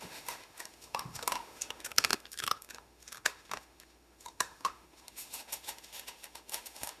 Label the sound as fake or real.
fake